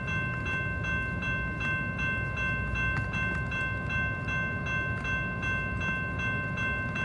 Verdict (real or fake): real